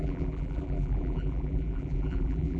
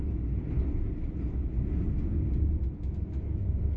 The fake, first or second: first